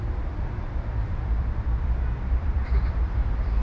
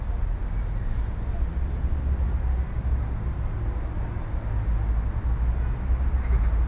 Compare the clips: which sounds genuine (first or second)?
second